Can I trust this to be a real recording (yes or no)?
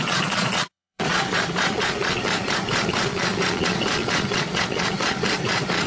no